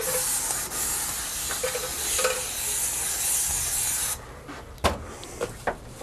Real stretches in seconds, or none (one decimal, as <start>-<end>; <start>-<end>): 0.0-1.9; 2.6-6.0